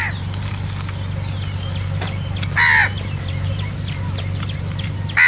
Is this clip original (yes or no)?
yes